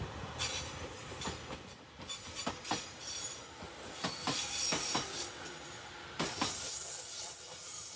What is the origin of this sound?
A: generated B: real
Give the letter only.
B